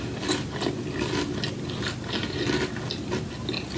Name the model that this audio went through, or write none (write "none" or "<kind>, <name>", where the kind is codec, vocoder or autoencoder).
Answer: none